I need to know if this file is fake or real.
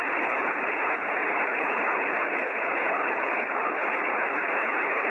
fake